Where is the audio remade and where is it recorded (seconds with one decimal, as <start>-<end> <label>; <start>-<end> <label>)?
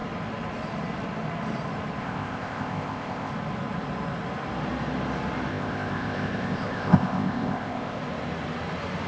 0.0-2.0 recorded; 2.0-3.3 remade; 3.3-5.5 recorded; 5.5-8.0 remade; 8.0-9.1 recorded